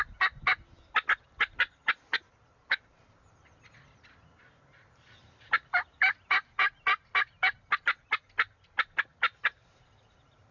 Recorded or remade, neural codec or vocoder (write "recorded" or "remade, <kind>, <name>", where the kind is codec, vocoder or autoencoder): recorded